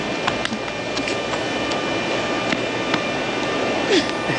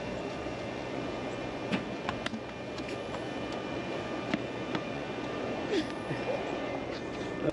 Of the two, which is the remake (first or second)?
second